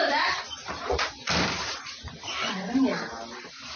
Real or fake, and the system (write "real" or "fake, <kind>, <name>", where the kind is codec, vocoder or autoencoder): fake, vocoder, BigVGAN v2